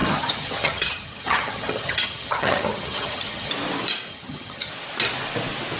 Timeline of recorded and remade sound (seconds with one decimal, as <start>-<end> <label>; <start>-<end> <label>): 0.0-3.5 remade; 3.5-4.1 recorded; 4.1-4.7 remade; 4.7-5.8 recorded